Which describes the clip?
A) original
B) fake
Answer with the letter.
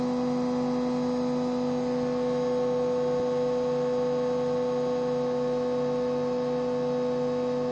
A